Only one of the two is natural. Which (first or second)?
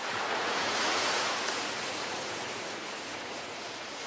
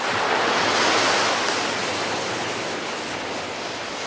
second